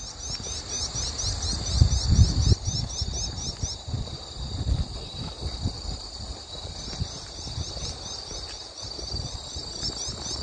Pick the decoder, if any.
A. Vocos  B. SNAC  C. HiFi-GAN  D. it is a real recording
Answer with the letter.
D